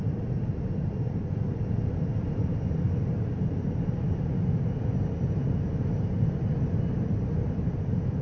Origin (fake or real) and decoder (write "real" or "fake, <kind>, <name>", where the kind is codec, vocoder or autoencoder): real